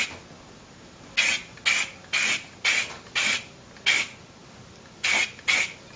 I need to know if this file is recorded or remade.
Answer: recorded